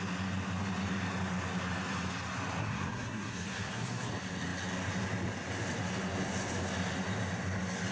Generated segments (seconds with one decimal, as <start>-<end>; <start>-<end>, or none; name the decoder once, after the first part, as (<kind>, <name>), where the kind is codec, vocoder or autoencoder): 2.6-4.1 (codec, SNAC)